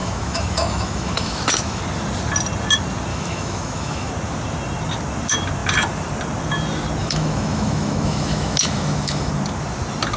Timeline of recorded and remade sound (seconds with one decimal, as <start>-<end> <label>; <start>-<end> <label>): 0.0-1.8 remade; 1.8-3.1 recorded; 3.1-4.1 remade; 4.1-7.0 recorded; 7.0-9.3 remade; 9.3-10.2 recorded